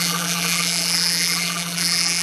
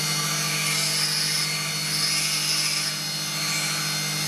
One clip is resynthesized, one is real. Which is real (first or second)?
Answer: second